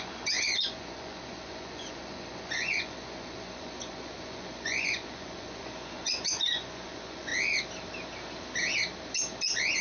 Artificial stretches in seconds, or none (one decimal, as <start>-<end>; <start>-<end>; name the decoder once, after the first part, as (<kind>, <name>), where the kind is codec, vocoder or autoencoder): 0.0-7.3 (vocoder, Vocos); 9.4-9.8